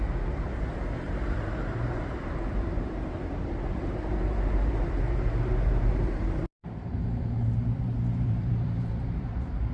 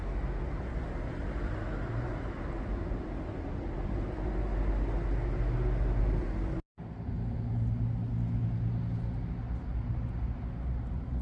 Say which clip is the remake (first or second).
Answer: first